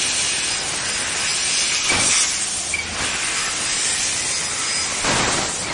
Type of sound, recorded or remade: recorded